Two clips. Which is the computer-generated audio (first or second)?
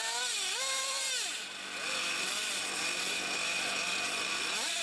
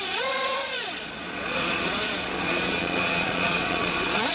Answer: second